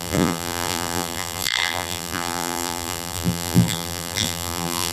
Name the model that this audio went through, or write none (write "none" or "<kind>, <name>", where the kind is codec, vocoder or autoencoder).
vocoder, BigVGAN v2